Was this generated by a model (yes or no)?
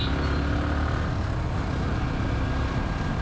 no